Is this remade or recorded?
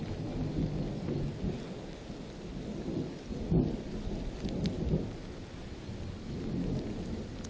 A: recorded